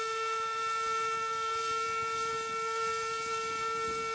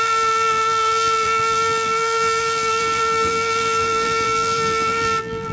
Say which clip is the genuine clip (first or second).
first